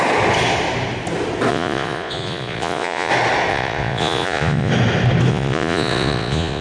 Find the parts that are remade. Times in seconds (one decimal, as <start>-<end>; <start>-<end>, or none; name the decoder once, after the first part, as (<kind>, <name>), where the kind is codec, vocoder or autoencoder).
1.5-3.1 (vocoder, Vocos); 3.5-4.7; 5.3-6.6